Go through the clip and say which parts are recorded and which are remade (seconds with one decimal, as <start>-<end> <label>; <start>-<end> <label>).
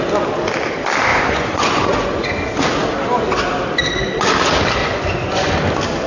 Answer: 0.0-1.1 recorded; 1.1-2.3 remade; 2.3-4.8 recorded; 4.8-5.5 remade; 5.5-6.1 recorded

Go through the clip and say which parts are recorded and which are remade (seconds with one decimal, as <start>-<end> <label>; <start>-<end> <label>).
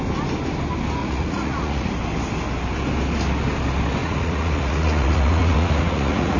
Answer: 0.0-1.0 recorded; 1.0-1.9 remade; 1.9-4.0 recorded; 4.0-6.4 remade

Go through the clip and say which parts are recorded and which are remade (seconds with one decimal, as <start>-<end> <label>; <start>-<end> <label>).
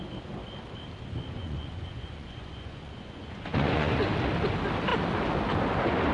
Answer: 0.0-1.4 recorded; 1.4-4.0 remade; 4.0-6.1 recorded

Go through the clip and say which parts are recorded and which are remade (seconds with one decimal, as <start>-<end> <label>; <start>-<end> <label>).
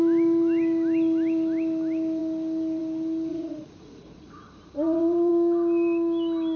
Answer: 0.0-3.3 recorded; 3.3-5.3 remade; 5.3-6.6 recorded